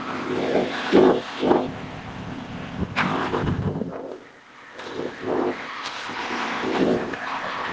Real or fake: fake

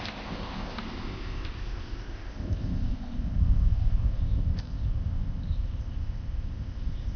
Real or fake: fake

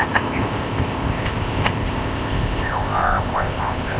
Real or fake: fake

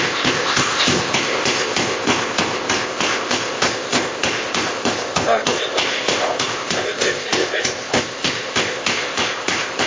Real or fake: fake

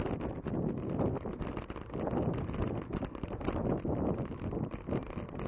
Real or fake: real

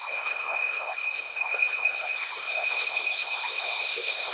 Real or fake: fake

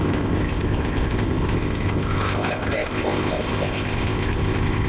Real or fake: fake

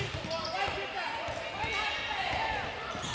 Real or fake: real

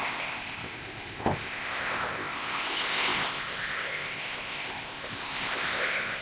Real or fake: fake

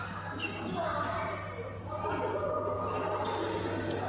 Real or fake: real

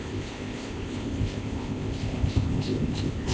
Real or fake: fake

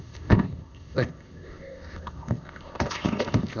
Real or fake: fake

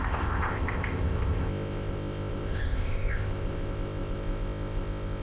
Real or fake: fake